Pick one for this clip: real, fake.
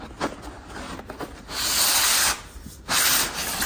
real